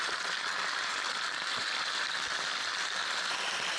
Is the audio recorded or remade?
recorded